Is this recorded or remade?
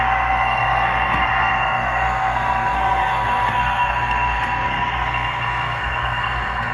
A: remade